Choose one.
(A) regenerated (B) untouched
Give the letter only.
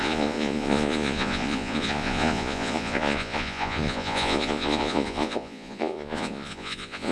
A